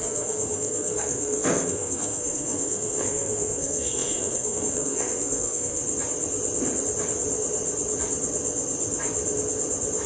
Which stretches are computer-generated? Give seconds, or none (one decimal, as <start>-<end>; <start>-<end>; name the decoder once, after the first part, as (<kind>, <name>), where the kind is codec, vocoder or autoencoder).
0.0-5.8 (codec, SNAC)